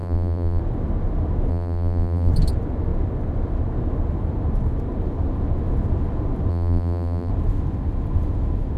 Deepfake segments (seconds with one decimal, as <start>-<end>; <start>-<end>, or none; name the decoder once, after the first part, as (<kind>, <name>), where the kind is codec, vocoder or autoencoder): 0.0-0.6 (vocoder, BigVGAN v2); 1.5-2.3; 6.5-7.3